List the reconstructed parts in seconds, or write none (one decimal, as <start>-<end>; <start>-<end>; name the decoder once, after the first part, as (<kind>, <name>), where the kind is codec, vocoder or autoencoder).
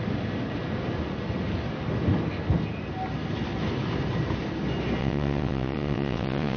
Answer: 5.0-6.6 (vocoder, WaveNeXt)